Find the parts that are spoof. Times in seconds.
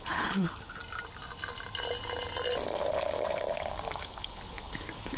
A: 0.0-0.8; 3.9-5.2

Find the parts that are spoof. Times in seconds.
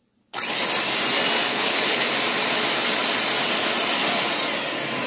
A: 1.5-2.1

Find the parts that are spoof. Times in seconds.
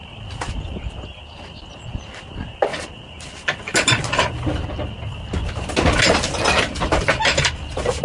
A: none